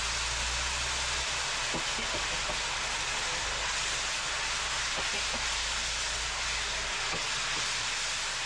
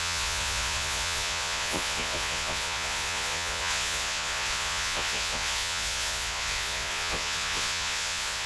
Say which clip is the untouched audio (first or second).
first